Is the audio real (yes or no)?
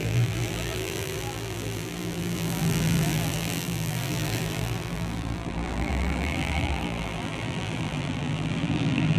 no